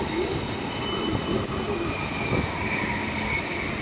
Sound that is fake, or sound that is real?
real